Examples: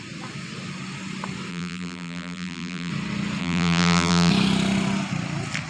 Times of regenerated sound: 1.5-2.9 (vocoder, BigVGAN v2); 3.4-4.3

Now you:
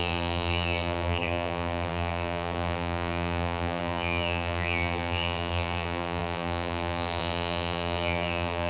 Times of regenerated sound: 0.0-8.7 (vocoder, BigVGAN v2)

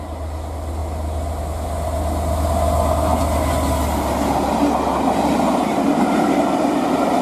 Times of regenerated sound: none

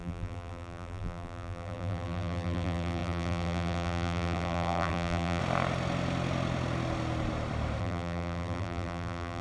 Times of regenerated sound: 0.0-5.4 (vocoder, BigVGAN v2); 7.8-9.4

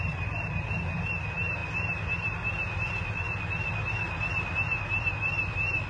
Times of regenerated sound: none

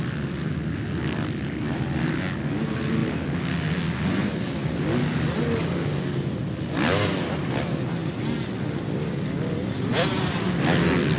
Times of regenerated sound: none

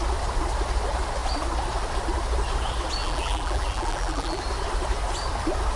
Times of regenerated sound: 3.0-4.4 (vocoder, BigVGAN v2)